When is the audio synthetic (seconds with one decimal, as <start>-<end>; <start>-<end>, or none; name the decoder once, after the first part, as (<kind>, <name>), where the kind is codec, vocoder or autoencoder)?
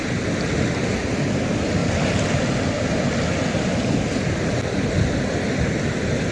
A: none